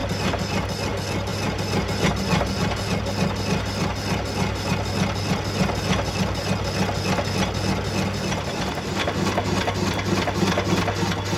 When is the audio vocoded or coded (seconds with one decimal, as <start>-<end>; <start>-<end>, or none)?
none